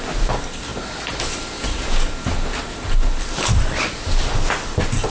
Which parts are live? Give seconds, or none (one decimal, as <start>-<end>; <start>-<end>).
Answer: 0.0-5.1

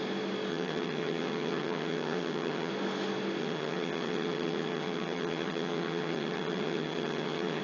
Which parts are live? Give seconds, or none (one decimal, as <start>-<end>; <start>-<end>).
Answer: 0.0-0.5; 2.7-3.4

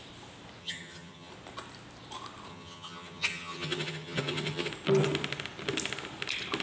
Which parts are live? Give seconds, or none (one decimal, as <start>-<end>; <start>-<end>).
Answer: 0.0-0.6; 1.3-2.5; 4.7-6.6

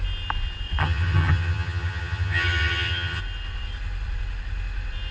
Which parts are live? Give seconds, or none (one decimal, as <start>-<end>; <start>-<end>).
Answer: 0.0-0.8; 3.2-5.1

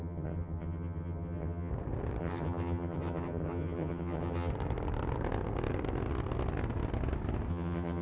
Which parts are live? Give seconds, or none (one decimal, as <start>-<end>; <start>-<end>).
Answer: 1.7-2.2; 4.5-7.5

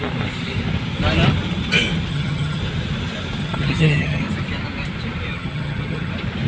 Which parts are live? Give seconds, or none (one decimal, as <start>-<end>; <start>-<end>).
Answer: 0.0-2.1; 2.6-3.4; 4.2-5.3; 6.1-6.5

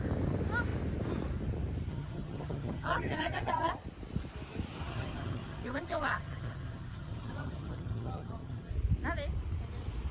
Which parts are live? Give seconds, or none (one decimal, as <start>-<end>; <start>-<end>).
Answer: 0.0-1.9; 3.7-4.8; 8.7-10.1

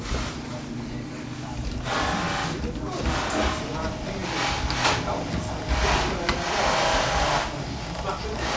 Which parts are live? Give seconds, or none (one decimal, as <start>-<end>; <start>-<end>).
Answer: 0.0-8.6